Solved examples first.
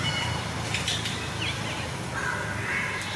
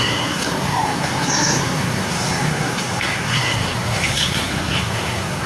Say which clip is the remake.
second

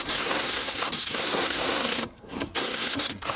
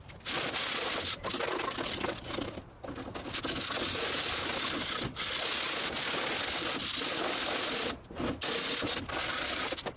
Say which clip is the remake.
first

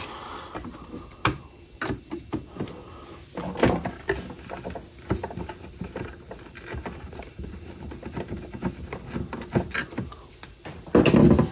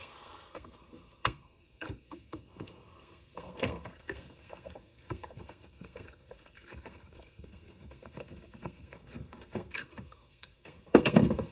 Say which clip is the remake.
second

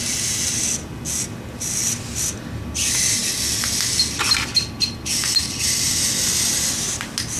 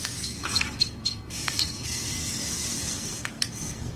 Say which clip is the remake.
second